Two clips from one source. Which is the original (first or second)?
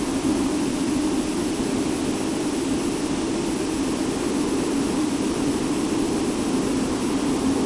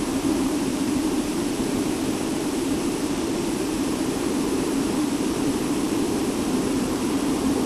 first